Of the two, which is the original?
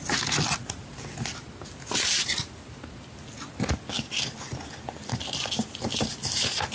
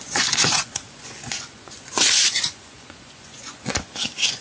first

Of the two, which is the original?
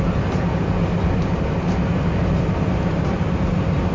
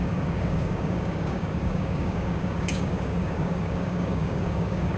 first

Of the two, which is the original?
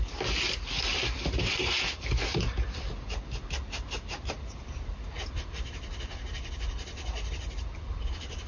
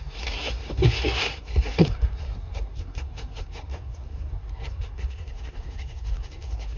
first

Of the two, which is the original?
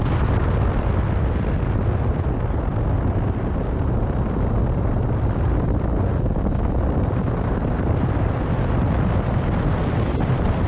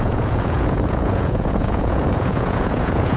first